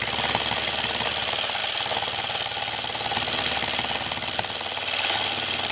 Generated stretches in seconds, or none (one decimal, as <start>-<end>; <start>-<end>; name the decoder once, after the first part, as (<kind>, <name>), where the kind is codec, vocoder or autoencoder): none